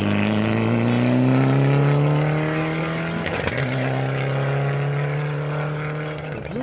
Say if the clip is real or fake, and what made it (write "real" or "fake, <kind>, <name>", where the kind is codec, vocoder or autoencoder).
real